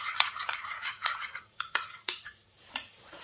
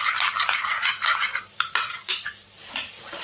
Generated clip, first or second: first